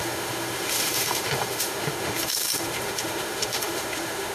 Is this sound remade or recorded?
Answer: remade